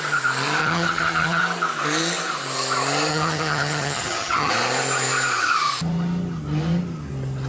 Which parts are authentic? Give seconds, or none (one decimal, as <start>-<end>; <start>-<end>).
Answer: 0.0-0.6; 1.4-3.1; 4.5-7.5